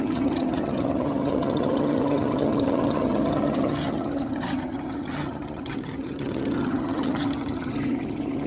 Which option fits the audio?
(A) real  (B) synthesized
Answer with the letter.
B